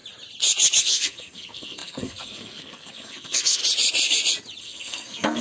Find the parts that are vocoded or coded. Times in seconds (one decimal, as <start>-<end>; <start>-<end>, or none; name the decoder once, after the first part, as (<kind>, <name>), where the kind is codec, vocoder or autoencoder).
0.8-3.6 (codec, SNAC); 4.6-5.4